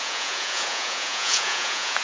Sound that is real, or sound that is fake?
fake